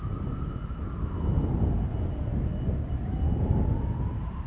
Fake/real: real